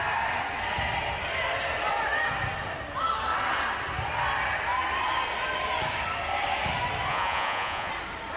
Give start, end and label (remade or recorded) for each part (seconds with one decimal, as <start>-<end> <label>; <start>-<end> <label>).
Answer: 0.0-7.1 recorded; 7.1-7.9 remade; 7.9-8.4 recorded